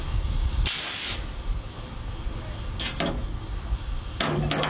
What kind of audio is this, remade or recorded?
recorded